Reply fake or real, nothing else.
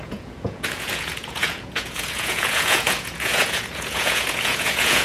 fake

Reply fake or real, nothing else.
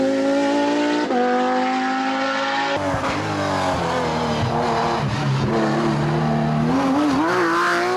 real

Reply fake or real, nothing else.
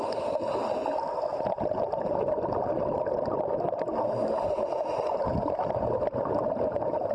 real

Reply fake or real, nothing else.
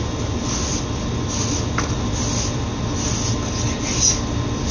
real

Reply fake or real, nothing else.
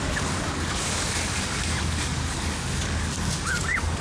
fake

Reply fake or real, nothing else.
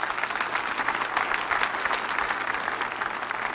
real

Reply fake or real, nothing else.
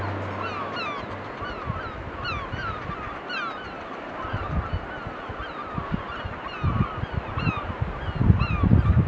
real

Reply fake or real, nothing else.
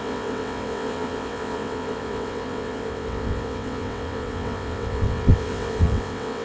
fake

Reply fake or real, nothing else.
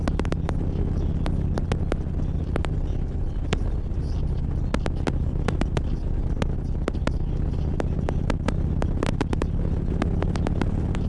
real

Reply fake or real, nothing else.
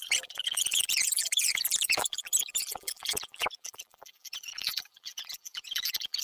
fake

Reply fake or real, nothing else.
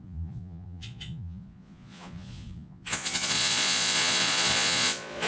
fake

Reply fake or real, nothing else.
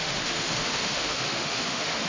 fake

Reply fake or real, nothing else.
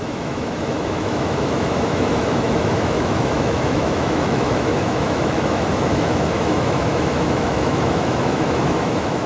fake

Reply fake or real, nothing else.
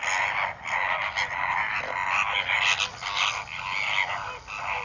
real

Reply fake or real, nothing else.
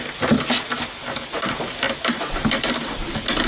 real